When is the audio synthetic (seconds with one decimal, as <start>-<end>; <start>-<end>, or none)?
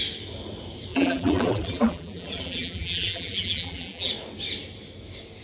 0.9-4.1